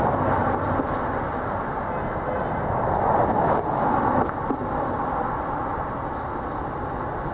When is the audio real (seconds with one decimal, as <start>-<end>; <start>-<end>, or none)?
0.0-7.3